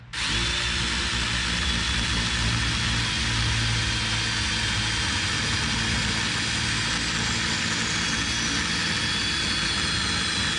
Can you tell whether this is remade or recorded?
recorded